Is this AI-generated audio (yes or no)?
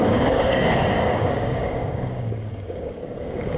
yes